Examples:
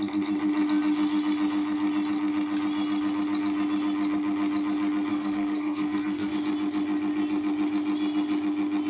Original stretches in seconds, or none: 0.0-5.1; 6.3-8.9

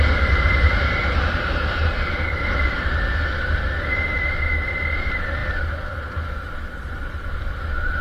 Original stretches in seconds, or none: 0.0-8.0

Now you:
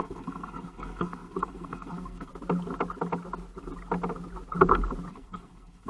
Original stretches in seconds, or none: 2.3-5.1

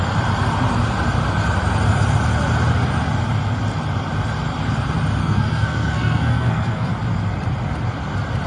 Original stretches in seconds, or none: 0.0-5.2; 6.9-8.5

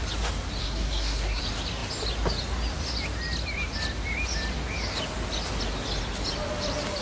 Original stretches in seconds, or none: 0.0-0.6; 1.4-7.0